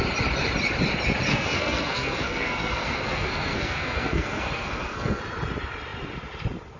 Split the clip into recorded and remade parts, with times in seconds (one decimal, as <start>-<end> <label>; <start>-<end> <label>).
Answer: 0.0-1.3 recorded; 1.3-5.2 remade; 5.2-6.8 recorded

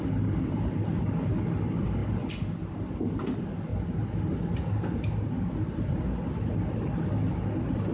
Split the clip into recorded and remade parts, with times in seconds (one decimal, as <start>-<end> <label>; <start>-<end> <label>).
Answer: 0.0-7.9 recorded

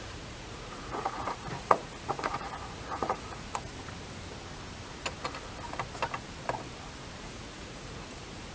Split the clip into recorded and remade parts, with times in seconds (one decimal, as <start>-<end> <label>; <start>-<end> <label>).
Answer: 0.0-3.7 remade; 3.7-7.2 recorded; 7.2-8.5 remade

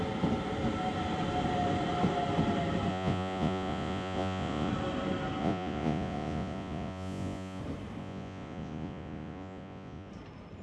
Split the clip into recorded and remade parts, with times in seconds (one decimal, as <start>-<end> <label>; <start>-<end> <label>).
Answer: 0.0-2.9 recorded; 2.9-4.7 remade; 4.7-5.4 recorded; 5.4-7.6 remade; 7.6-8.0 recorded; 8.0-10.1 remade; 10.1-10.6 recorded

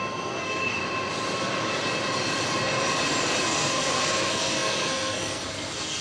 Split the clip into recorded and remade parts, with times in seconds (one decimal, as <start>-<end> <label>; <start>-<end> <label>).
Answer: 0.0-0.8 remade; 0.8-3.4 recorded; 3.4-6.0 remade

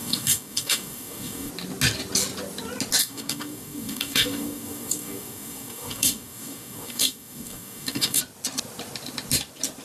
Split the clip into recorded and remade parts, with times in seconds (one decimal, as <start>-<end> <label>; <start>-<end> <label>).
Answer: 0.0-1.5 remade; 1.5-3.0 recorded; 3.0-8.2 remade; 8.2-9.8 recorded